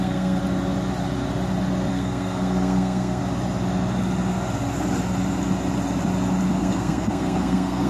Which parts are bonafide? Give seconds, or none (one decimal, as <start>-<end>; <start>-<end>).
0.4-1.9; 3.2-6.6